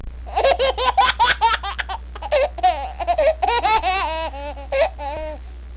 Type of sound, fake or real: real